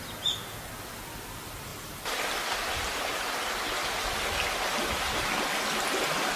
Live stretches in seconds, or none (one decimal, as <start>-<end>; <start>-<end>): 0.0-1.7; 3.2-3.8